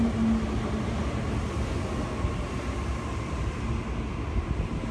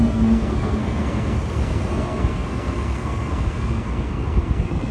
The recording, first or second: first